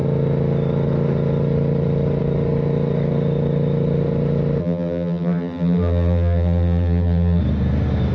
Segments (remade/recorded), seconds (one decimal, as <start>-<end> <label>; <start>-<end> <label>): 0.0-4.6 recorded; 4.6-7.4 remade; 7.4-8.1 recorded